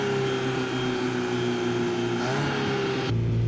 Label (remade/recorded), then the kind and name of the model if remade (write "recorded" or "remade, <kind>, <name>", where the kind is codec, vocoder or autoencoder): recorded